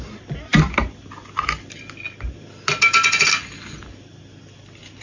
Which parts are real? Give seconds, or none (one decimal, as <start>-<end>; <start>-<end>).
0.0-5.0